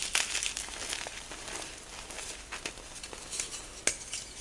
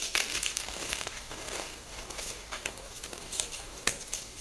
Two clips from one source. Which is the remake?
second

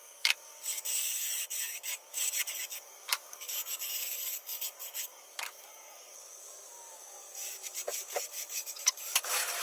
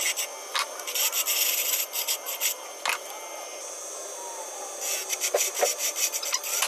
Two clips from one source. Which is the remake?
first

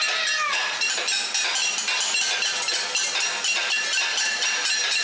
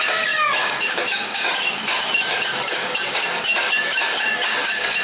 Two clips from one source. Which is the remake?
second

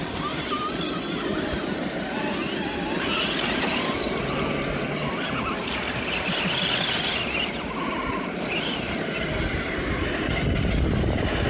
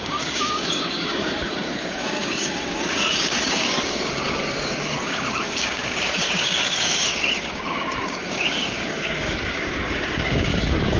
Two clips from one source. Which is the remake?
second